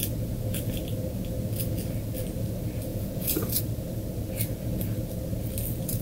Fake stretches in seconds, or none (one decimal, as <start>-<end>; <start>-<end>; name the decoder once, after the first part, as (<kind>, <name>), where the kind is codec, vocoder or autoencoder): 2.9-3.6 (vocoder, Vocos)